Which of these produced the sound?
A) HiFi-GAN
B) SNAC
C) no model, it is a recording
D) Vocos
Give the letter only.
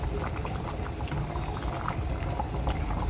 C